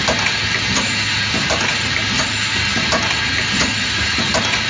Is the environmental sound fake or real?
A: real